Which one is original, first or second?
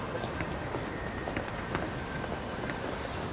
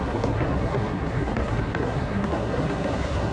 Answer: first